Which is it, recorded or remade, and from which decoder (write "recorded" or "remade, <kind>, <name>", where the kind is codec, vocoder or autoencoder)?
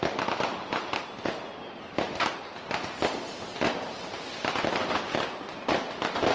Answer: recorded